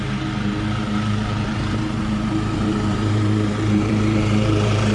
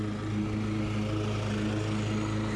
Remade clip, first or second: first